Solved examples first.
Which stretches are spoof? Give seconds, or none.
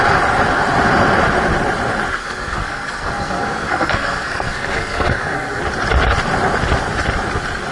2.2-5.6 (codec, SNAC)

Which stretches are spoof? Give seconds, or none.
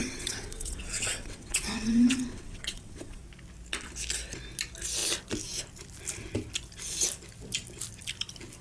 0.0-3.2 (vocoder, WaveNeXt)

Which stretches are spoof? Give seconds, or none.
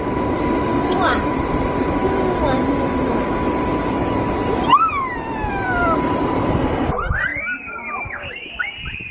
0.0-2.0 (vocoder, BigVGAN v2); 3.1-9.1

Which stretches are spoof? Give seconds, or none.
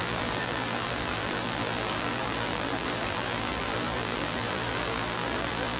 0.0-5.8 (vocoder, BigVGAN v2)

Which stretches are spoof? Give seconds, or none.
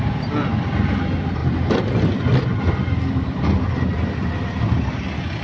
none